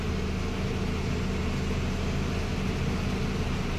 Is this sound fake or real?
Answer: real